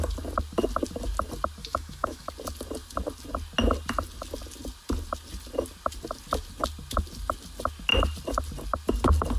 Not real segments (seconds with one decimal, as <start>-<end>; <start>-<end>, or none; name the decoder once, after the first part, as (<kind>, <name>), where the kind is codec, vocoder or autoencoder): 1.6-2.3 (autoencoder, DAC-VAE)